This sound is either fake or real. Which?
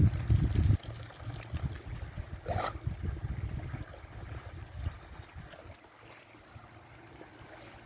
real